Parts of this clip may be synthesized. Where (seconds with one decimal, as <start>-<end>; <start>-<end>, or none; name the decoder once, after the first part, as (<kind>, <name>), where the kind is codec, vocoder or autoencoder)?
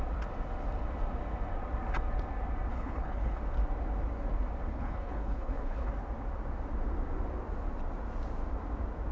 2.7-3.4 (codec, HILCodec); 4.7-5.9